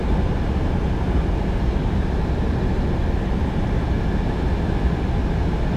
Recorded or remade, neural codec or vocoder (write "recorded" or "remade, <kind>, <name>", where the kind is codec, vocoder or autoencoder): recorded